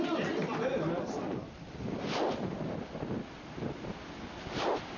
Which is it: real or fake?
real